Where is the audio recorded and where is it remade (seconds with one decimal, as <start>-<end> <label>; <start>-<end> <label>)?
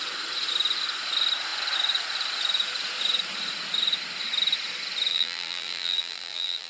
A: 0.0-5.1 recorded; 5.1-6.7 remade